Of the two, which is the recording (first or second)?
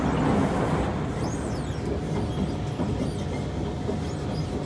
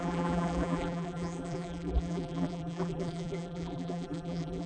first